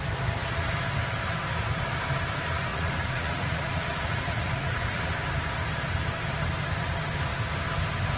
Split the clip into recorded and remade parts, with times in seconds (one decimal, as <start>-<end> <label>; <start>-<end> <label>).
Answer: 0.0-2.7 recorded; 2.7-5.1 remade; 5.1-8.2 recorded

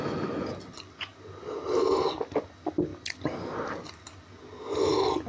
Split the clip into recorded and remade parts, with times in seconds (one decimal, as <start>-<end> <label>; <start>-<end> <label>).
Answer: 0.0-5.3 recorded

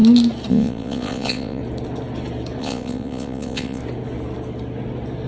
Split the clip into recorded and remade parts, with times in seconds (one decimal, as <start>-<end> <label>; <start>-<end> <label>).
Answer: 0.0-0.5 recorded; 0.5-1.6 remade; 1.6-2.6 recorded; 2.6-3.8 remade; 3.8-5.3 recorded

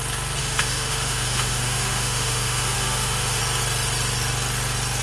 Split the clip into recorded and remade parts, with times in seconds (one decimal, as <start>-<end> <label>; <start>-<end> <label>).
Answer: 0.0-0.4 recorded; 0.4-3.4 remade; 3.4-5.0 recorded

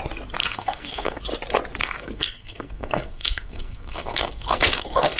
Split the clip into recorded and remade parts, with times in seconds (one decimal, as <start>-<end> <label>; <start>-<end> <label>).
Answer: 0.0-0.4 recorded; 0.4-1.2 remade; 1.2-1.8 recorded; 1.8-5.2 remade

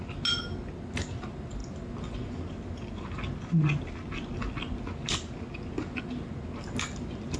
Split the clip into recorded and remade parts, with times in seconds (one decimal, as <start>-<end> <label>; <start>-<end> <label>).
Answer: 0.0-7.4 recorded